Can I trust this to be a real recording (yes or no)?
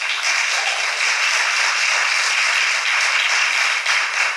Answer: yes